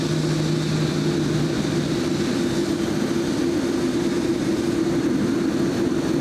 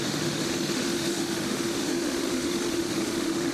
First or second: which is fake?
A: second